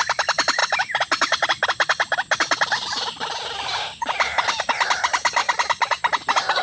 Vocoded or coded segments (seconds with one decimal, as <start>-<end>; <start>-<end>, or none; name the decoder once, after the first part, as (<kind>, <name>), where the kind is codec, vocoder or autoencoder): 0.6-4.6 (vocoder, BigVGAN v2)